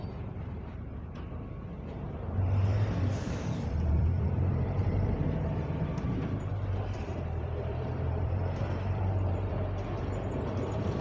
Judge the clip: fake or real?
fake